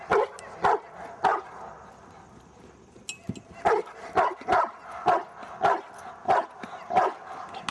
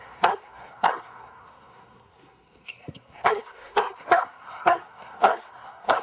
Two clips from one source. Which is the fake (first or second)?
second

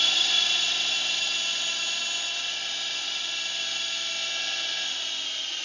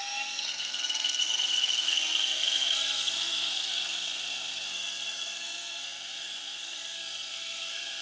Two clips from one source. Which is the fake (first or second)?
second